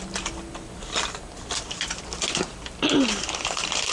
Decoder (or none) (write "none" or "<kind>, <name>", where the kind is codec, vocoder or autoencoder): none